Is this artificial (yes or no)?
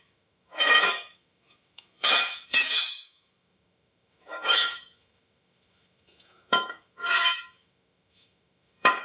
yes